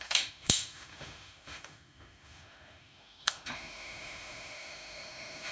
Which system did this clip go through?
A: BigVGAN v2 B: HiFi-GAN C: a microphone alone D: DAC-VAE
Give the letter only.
D